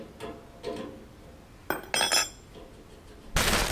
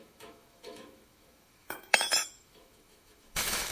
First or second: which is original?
first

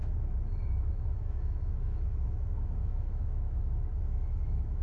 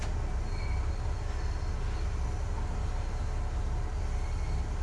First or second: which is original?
second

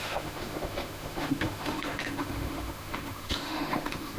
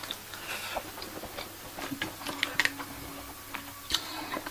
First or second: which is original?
second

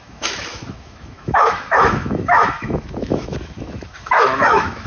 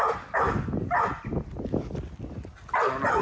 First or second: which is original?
second